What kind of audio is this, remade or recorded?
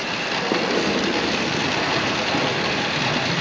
recorded